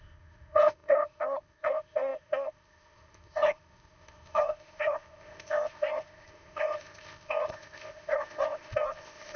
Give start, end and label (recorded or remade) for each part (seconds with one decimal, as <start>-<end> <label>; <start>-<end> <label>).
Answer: 0.0-9.4 remade